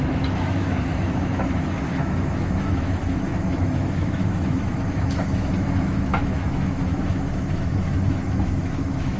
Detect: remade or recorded remade